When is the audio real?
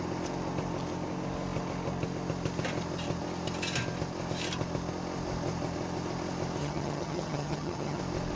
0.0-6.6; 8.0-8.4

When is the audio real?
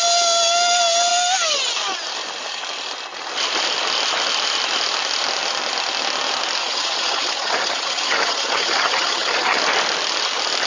0.0-6.6; 9.6-10.7